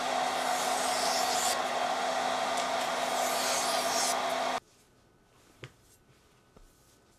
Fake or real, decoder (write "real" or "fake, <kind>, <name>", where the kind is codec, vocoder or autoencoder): real